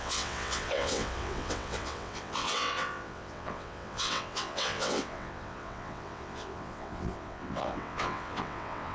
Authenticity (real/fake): fake